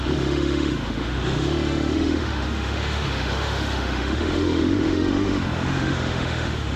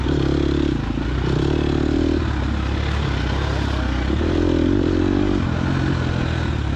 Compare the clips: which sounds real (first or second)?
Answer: second